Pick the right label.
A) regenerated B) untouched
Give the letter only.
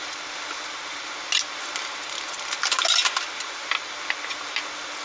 B